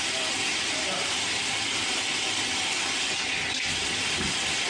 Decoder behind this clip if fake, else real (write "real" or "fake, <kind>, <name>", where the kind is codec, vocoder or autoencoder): real